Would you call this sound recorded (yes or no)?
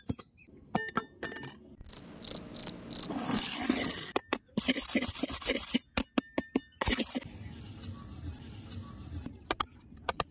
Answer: yes